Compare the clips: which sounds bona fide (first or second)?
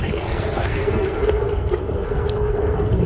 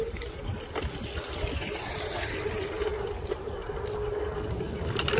second